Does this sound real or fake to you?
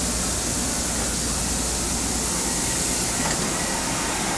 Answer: real